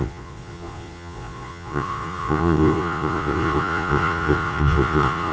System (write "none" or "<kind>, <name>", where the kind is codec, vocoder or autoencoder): vocoder, Vocos